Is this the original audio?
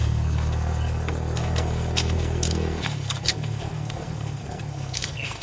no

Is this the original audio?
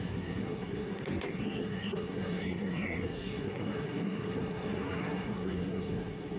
no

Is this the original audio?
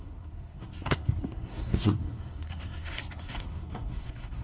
no